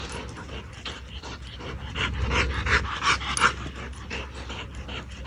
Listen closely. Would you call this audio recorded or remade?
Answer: recorded